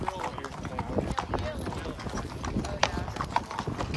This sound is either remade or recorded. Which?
recorded